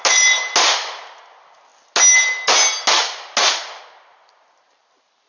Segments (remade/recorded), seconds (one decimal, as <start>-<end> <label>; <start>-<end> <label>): 0.0-5.3 recorded